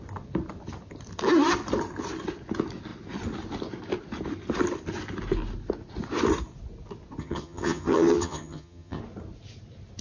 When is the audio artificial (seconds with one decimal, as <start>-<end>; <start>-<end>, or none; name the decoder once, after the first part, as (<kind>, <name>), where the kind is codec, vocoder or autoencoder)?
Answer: 7.2-9.0 (vocoder, HiFi-GAN)